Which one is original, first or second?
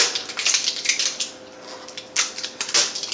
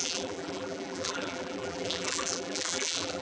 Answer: first